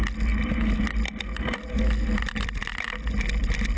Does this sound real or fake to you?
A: real